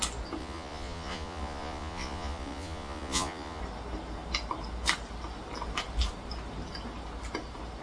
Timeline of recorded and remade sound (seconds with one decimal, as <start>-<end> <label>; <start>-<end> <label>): 0.0-0.4 recorded; 0.4-3.6 remade; 3.6-7.8 recorded

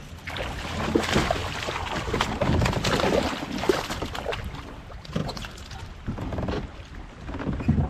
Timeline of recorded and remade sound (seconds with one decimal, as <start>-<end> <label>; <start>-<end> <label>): 0.0-7.9 recorded